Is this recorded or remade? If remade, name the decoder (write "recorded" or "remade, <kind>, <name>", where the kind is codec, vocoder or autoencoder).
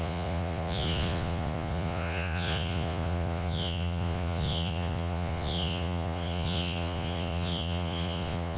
remade, vocoder, Vocos